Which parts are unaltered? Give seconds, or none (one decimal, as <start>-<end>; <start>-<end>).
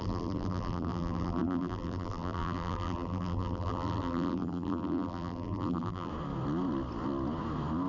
6.1-7.9